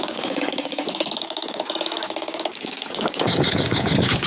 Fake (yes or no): yes